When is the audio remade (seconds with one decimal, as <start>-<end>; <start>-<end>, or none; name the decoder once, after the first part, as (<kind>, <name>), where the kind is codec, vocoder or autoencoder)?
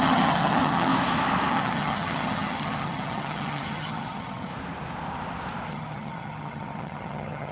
0.0-0.9 (vocoder, HiFi-GAN); 1.5-4.5; 5.7-7.5